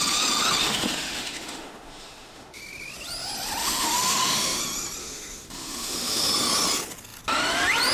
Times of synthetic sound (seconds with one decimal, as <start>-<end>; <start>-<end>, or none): 0.6-2.6; 3.6-4.6; 5.0-6.3